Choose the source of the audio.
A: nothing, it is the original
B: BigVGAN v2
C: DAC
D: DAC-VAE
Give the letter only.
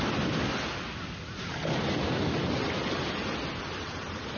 A